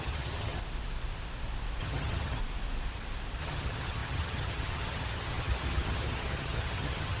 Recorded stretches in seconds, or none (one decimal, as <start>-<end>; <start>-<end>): 0.6-1.8; 2.4-3.4